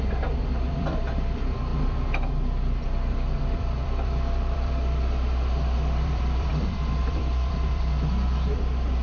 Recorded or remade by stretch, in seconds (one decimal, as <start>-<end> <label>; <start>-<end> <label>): 0.0-9.0 remade